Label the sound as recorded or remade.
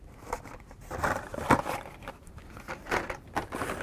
recorded